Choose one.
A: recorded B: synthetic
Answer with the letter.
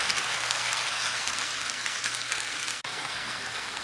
B